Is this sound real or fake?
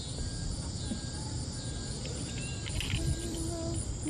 real